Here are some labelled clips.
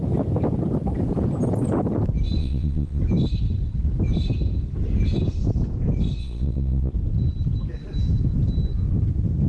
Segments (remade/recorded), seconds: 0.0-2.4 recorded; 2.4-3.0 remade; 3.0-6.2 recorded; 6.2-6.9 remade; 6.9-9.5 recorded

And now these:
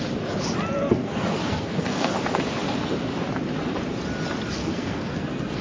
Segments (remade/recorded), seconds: 0.0-0.8 recorded; 0.8-2.1 remade; 2.1-4.6 recorded; 4.6-5.6 remade

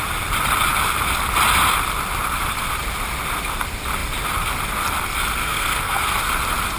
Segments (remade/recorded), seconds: 0.0-5.4 recorded; 5.4-6.2 remade; 6.2-6.8 recorded

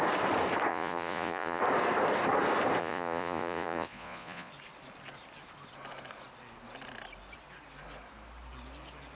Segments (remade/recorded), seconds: 0.0-0.7 recorded; 0.7-1.6 remade; 1.6-2.8 recorded; 2.8-4.5 remade; 4.5-9.2 recorded

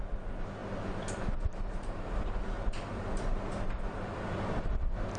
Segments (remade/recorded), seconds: 0.0-5.2 recorded